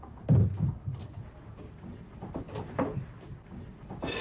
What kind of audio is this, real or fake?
fake